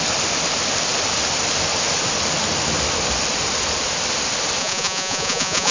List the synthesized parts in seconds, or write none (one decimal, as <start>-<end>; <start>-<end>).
4.6-5.7